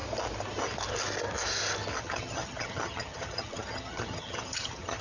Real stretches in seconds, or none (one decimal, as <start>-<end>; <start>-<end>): 0.0-2.0